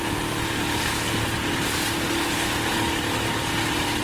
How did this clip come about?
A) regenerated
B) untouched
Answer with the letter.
B